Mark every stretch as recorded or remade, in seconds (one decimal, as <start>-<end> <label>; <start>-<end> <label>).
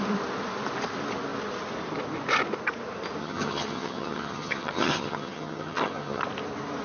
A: 0.0-3.2 recorded; 3.2-6.2 remade; 6.2-6.8 recorded